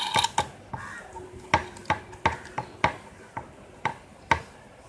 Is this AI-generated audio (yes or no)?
no